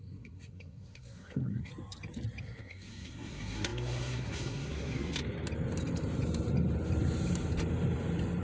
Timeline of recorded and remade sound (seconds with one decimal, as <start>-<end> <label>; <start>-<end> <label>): 0.0-1.7 remade; 1.7-2.4 recorded; 2.4-5.2 remade; 5.2-8.4 recorded